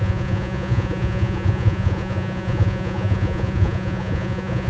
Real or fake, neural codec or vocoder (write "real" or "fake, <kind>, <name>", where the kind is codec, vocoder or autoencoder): fake, vocoder, Vocos